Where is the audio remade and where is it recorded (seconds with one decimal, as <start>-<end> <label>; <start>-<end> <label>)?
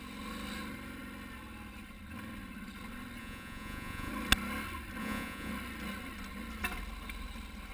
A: 0.0-3.2 recorded; 3.2-4.1 remade; 4.1-5.0 recorded; 5.0-5.5 remade; 5.5-7.7 recorded